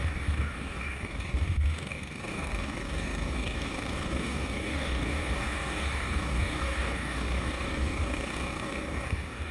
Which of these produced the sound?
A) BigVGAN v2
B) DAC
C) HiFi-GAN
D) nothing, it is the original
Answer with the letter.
B